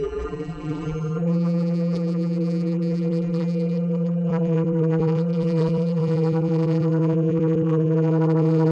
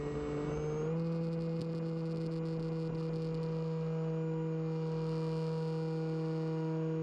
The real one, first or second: second